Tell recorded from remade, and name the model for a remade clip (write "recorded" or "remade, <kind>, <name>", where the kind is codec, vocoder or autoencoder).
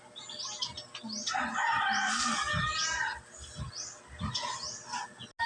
recorded